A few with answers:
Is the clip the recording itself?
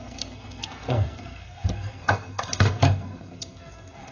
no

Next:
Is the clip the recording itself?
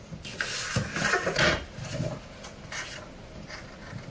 yes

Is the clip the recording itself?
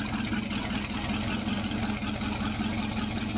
yes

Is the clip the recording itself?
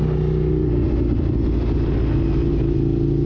yes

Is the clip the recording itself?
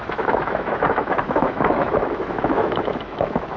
no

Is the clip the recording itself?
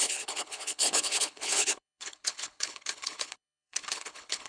no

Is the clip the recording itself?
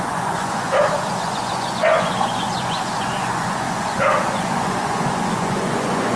no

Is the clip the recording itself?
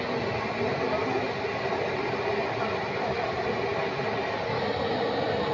yes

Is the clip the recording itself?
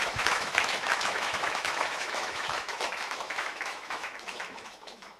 no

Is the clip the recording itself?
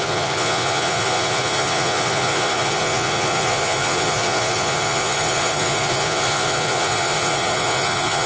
no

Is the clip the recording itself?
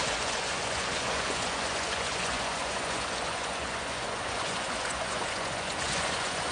no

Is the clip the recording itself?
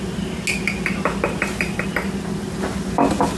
yes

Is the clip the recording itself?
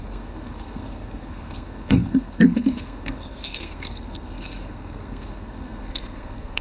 no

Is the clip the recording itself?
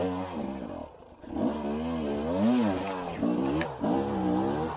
yes